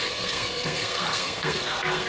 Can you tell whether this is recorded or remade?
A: remade